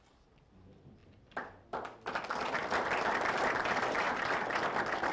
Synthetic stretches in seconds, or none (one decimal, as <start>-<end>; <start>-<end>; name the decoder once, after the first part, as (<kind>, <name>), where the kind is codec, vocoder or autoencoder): none